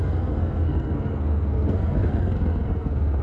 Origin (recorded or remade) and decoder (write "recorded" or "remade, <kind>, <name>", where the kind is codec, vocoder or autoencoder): remade, codec, SNAC